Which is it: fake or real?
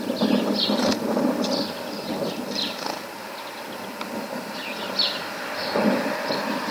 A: real